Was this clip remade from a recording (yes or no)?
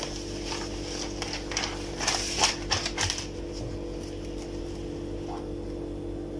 no